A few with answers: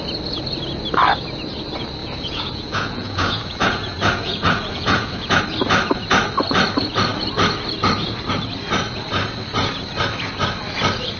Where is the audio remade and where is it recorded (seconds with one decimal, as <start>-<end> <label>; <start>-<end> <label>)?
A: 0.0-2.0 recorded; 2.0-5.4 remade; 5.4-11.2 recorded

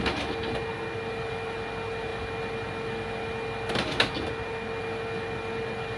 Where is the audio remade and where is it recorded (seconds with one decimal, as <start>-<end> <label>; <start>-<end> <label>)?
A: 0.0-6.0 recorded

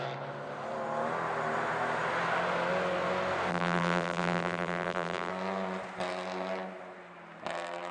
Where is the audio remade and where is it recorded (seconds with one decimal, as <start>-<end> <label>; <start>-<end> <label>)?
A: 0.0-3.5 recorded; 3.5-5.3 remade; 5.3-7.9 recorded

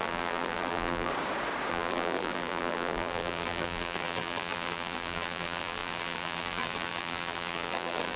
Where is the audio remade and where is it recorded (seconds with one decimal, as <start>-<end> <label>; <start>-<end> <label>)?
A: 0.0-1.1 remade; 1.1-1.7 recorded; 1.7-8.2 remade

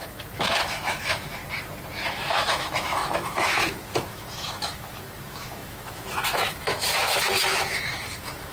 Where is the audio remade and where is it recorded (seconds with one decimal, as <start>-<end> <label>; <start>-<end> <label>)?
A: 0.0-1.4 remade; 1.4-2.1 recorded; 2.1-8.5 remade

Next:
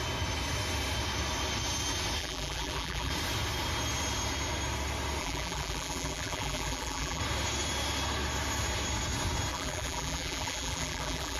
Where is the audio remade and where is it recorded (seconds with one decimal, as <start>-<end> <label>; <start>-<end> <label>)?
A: 0.0-2.2 recorded; 2.2-3.1 remade; 3.1-5.2 recorded; 5.2-7.2 remade; 7.2-9.5 recorded; 9.5-11.4 remade

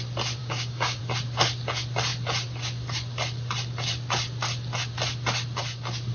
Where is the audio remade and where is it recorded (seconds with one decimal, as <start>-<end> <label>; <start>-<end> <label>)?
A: 0.0-0.4 recorded; 0.4-1.0 remade; 1.0-6.1 recorded

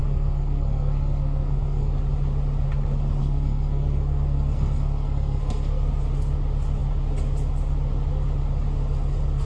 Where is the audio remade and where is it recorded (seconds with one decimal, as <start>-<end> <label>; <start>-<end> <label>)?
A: 0.0-1.9 remade; 1.9-3.2 recorded; 3.2-5.9 remade; 5.9-9.5 recorded